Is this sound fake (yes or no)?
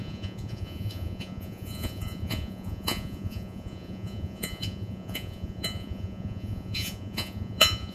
yes